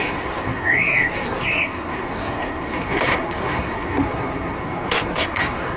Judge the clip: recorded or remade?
remade